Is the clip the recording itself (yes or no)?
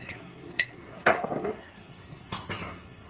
no